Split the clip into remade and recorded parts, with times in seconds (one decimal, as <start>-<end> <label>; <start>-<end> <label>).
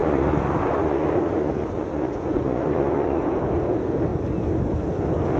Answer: 0.0-3.2 remade; 3.2-5.4 recorded